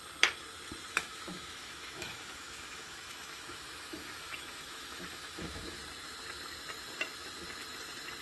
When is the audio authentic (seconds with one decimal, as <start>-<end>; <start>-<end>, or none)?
0.0-0.9; 5.8-8.2